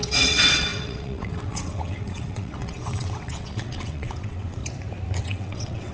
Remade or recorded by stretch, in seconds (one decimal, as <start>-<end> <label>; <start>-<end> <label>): 0.0-4.6 remade; 4.6-5.2 recorded; 5.2-5.9 remade